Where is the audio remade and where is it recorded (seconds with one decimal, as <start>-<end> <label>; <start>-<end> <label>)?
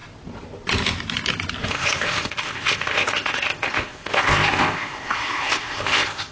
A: 0.0-1.7 recorded; 1.7-6.3 remade